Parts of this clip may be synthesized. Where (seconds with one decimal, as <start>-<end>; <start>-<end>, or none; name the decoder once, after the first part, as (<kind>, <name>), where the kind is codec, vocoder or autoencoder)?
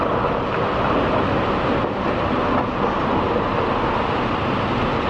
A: none